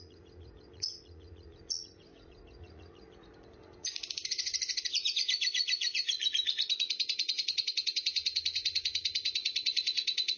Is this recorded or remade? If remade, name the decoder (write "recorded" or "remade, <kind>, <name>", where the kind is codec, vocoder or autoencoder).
remade, vocoder, Vocos